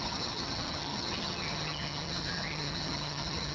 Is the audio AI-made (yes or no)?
yes